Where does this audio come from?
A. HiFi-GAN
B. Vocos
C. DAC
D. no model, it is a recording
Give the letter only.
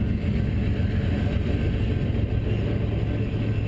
D